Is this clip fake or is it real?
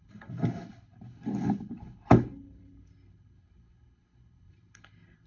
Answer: fake